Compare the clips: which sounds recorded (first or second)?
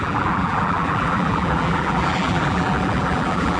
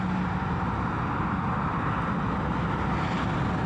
second